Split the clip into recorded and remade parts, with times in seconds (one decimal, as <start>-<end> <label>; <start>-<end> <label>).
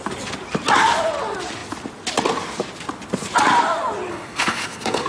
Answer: 0.0-4.1 recorded; 4.1-5.1 remade